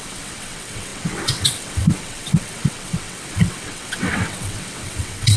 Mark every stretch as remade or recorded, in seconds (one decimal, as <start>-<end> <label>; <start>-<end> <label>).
0.0-5.4 remade

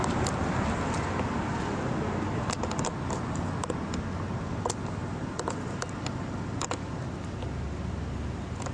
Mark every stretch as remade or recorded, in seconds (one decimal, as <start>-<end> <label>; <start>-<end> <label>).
0.0-8.7 recorded